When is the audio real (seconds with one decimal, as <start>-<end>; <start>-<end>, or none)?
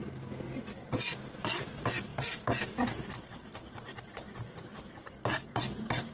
0.0-6.1